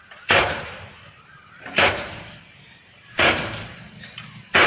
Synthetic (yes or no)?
yes